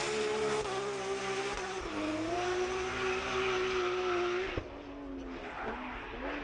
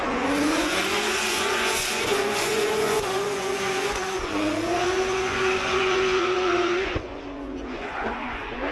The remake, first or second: second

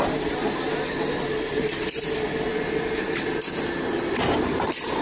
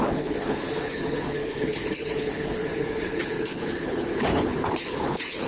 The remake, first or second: second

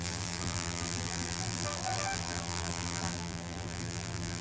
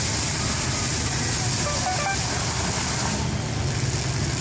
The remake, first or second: first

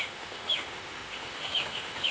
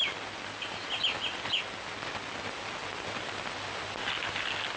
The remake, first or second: first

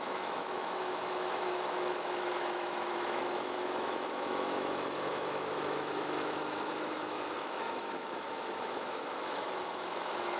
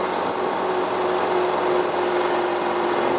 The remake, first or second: first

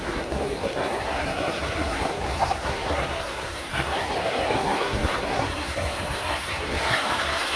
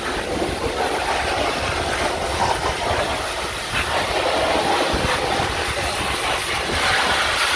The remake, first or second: first